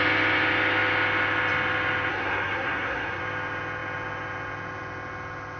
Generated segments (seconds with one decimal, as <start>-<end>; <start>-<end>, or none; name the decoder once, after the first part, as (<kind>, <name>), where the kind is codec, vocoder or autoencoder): 2.1-3.2 (codec, SNAC)

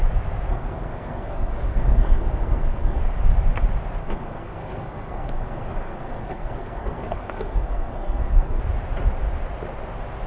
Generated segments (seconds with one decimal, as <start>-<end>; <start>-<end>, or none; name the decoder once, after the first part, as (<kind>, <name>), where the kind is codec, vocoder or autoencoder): 0.5-3.0 (codec, SNAC); 4.0-8.6

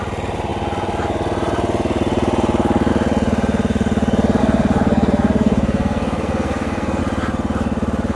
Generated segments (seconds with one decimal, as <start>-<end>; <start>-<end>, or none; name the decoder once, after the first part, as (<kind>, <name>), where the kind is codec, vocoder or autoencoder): 4.4-7.0 (codec, SNAC)